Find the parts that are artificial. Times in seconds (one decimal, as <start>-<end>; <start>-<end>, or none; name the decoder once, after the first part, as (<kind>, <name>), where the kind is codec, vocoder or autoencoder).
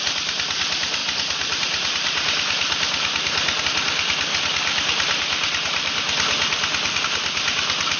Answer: none